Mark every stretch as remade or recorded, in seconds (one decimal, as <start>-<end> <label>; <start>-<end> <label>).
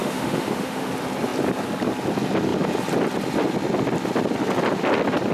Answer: 0.0-0.9 remade; 0.9-5.3 recorded